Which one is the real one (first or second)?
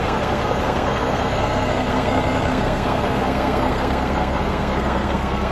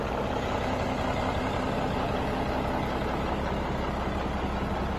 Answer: second